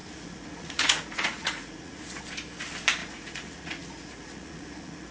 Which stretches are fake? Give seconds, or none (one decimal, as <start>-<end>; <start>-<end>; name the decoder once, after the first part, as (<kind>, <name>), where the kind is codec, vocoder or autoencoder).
0.0-2.2 (vocoder, Vocos); 3.0-5.1